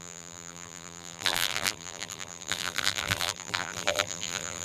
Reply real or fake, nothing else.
fake